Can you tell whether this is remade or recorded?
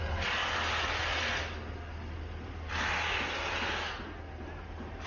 recorded